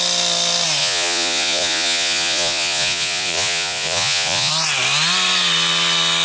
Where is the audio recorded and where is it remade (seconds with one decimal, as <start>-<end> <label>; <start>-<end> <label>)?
0.0-0.8 recorded; 0.8-4.5 remade; 4.5-6.2 recorded